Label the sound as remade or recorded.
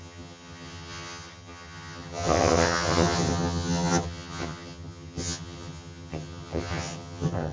remade